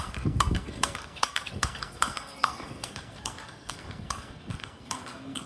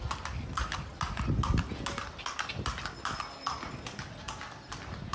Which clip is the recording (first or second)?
second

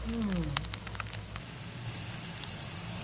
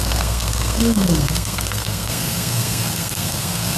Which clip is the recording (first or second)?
first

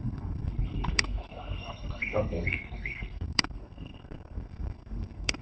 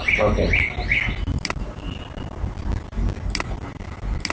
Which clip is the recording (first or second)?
second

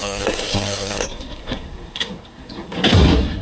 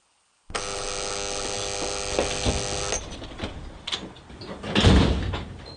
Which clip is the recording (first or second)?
second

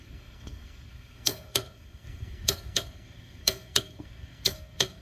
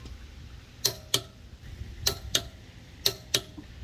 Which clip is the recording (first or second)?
second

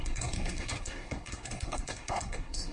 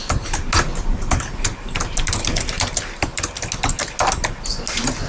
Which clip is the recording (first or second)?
second